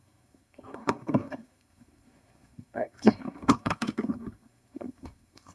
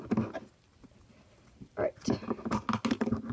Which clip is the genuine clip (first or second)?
second